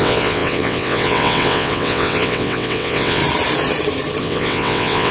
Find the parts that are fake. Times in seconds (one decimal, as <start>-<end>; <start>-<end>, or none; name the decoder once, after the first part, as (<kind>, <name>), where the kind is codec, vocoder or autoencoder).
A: 0.0-3.2 (vocoder, WaveNeXt); 4.2-5.1